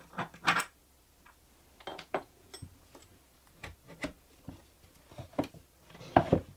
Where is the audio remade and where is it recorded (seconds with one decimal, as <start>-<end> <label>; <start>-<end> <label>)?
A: 0.0-1.9 recorded; 1.9-2.5 remade; 2.5-6.6 recorded